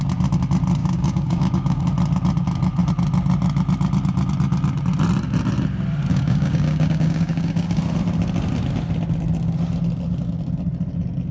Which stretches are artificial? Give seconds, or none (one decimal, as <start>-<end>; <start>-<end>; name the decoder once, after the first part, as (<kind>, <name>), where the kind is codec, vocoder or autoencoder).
0.8-1.8 (codec, DAC); 6.1-7.8